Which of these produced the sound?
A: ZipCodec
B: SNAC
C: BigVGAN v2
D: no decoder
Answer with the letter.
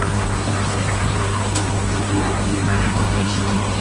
B